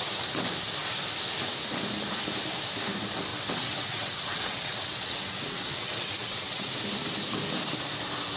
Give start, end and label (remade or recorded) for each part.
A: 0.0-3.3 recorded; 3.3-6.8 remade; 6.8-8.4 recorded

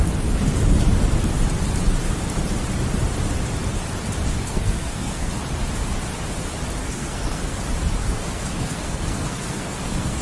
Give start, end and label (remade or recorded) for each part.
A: 0.0-4.3 recorded; 4.3-5.3 remade; 5.3-6.8 recorded; 6.8-7.6 remade; 7.6-8.0 recorded; 8.0-10.2 remade

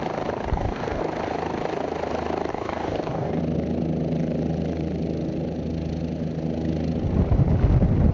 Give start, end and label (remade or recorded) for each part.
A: 0.0-0.5 recorded; 0.5-1.0 remade; 1.0-2.5 recorded; 2.5-3.4 remade; 3.4-8.1 recorded

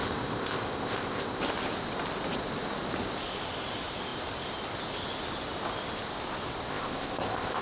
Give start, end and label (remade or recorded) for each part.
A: 0.0-1.4 remade; 1.4-6.7 recorded; 6.7-7.6 remade

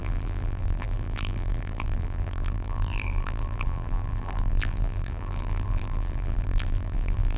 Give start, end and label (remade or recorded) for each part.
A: 0.0-7.4 remade

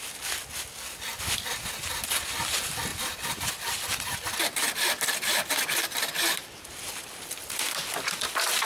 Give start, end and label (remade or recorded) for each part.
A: 0.0-2.9 recorded; 2.9-7.9 remade; 7.9-8.7 recorded